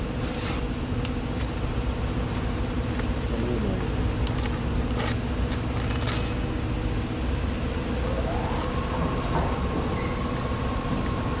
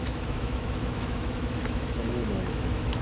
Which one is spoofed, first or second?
second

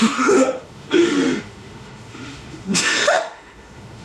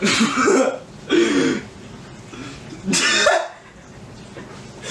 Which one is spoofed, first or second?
first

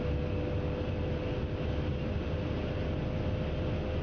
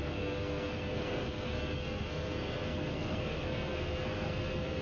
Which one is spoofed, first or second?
second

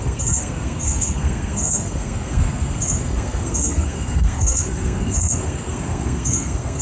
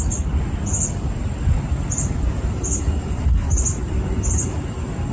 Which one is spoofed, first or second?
first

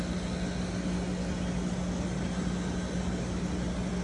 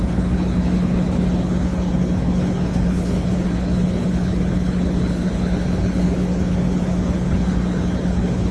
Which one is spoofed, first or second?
second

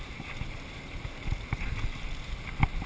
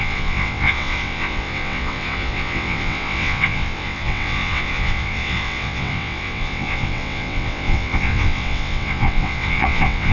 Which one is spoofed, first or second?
second